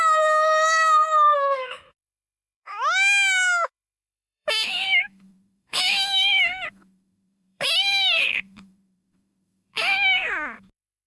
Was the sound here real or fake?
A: fake